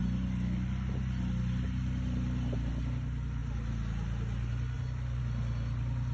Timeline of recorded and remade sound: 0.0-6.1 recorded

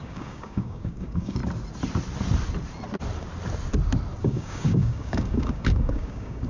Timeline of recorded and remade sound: 0.0-1.4 remade; 1.4-4.2 recorded; 4.2-6.5 remade

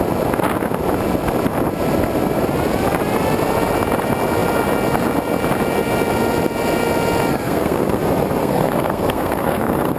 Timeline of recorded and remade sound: 0.0-7.3 recorded; 7.3-8.0 remade; 8.0-8.4 recorded; 8.4-10.0 remade

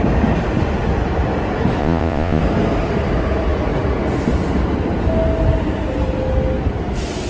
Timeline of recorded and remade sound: 0.0-1.8 recorded; 1.8-2.4 remade; 2.4-7.3 recorded

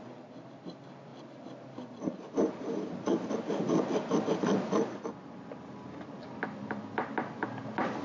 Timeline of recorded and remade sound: 0.0-1.1 recorded; 1.1-3.3 remade; 3.3-8.0 recorded

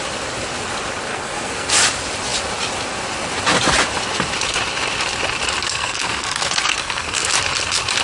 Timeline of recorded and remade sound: 0.0-1.1 recorded; 1.1-1.7 remade; 1.7-5.6 recorded; 5.6-7.3 remade; 7.3-8.0 recorded

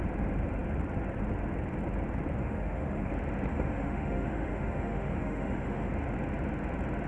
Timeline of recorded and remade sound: 0.0-2.4 recorded; 2.4-3.1 remade; 3.1-3.5 recorded; 3.5-5.9 remade; 5.9-7.1 recorded